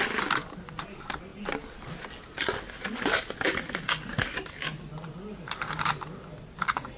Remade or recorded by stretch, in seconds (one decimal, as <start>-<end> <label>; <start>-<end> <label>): 0.0-7.0 recorded